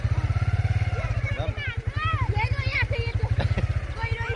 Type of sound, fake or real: real